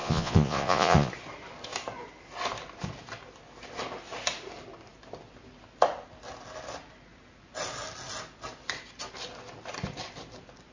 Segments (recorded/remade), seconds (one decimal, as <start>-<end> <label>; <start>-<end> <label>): 0.0-1.1 remade; 1.1-10.7 recorded

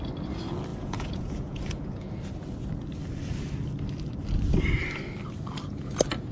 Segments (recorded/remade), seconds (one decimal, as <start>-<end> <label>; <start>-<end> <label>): 0.0-0.7 recorded; 0.7-2.2 remade; 2.2-6.3 recorded

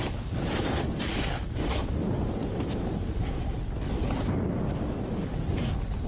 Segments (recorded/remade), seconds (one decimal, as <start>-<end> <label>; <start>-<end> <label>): 0.0-6.1 recorded